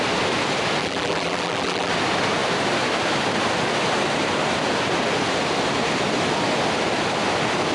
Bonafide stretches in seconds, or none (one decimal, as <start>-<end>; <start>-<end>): 0.0-0.8; 1.9-7.7